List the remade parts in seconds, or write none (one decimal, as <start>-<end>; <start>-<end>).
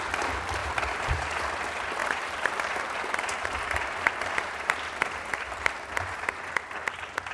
0.6-1.4; 2.0-6.4